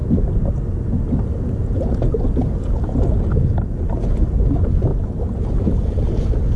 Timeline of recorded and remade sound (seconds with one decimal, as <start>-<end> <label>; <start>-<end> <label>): 0.0-6.6 recorded